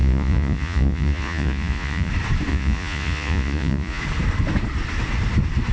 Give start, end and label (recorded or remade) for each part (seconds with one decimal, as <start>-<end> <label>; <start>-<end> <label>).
0.0-2.1 remade; 2.1-2.5 recorded; 2.5-4.0 remade; 4.0-5.7 recorded